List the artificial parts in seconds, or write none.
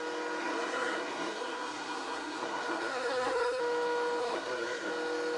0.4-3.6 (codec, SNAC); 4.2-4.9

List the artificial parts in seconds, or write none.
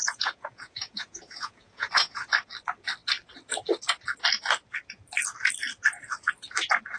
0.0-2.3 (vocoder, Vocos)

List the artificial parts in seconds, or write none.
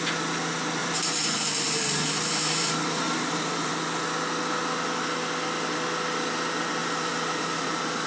0.8-3.7 (vocoder, BigVGAN v2); 6.8-8.1